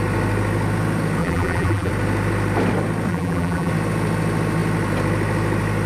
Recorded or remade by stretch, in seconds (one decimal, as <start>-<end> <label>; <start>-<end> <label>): 0.0-1.2 recorded; 1.2-1.9 remade; 1.9-3.1 recorded; 3.1-3.7 remade; 3.7-5.9 recorded